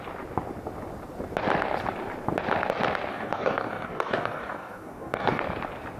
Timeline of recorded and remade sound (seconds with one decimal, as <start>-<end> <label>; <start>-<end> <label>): 0.0-3.1 recorded; 3.1-5.4 remade; 5.4-6.0 recorded